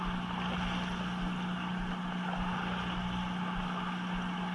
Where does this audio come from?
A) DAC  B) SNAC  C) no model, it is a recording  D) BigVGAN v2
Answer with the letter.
C